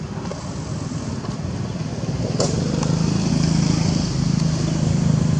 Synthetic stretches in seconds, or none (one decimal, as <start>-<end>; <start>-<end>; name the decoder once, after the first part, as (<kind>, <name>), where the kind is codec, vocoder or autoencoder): none